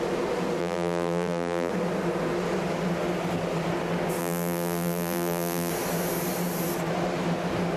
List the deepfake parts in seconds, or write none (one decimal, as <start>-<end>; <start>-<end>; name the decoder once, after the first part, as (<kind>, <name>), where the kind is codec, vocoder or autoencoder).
0.6-1.7 (vocoder, BigVGAN v2); 4.2-5.7